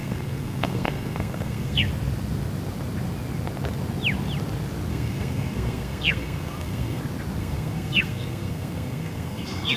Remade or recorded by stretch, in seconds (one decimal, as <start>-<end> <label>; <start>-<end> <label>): 0.0-1.9 remade; 1.9-4.9 recorded; 4.9-7.0 remade; 7.0-7.4 recorded; 7.4-9.8 remade